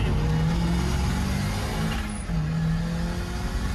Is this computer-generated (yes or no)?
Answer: no